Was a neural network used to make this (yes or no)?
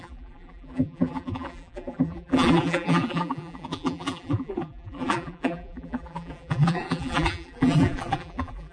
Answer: yes